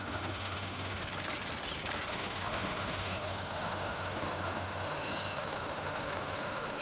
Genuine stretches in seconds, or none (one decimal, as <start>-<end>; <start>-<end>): 1.0-2.1